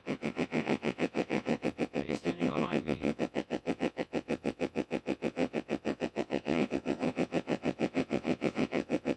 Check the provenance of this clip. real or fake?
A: fake